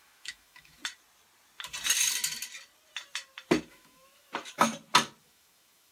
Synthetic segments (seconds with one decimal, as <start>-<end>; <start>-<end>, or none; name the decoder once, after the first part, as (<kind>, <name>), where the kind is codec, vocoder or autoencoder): 0.0-0.8 (autoencoder, DAC-VAE); 3.7-4.7; 5.2-5.9